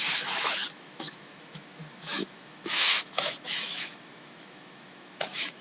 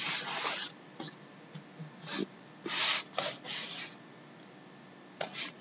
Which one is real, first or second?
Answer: second